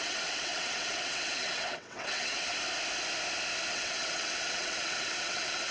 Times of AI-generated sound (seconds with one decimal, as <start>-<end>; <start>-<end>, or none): 0.0-2.5; 3.7-5.7